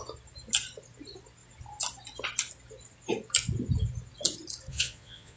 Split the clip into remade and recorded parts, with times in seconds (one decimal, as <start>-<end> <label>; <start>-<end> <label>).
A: 0.0-4.7 recorded; 4.7-5.4 remade